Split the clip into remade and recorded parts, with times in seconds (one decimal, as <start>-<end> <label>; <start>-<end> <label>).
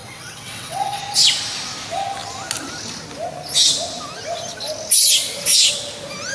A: 0.0-1.0 remade; 1.0-6.3 recorded